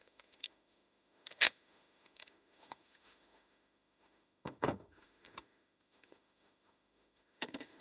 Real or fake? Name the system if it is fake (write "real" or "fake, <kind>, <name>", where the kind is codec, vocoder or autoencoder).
fake, autoencoder, DAC-VAE